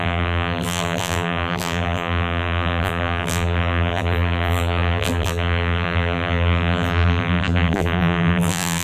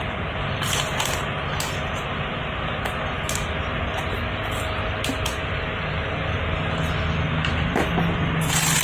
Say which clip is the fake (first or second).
first